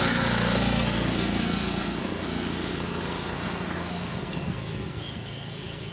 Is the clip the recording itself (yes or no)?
no